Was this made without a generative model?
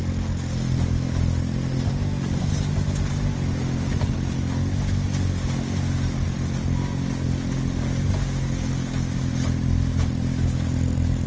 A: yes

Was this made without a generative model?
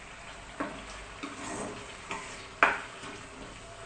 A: yes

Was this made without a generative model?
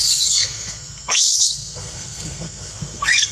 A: no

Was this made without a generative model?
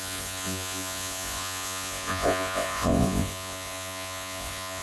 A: no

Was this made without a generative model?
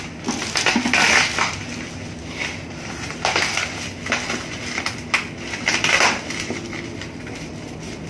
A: yes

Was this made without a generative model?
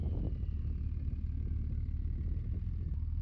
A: yes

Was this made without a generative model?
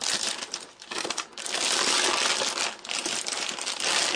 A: yes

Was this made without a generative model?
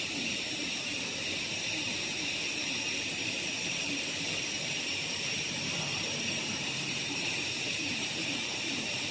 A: no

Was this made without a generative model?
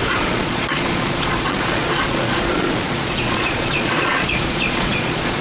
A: no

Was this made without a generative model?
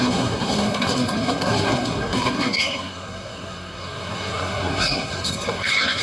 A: no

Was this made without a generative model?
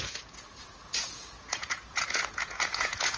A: no